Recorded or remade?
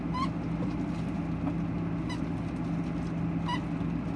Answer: recorded